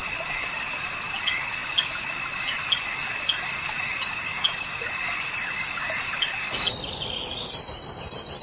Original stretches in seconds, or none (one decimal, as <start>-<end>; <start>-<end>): 0.0-8.4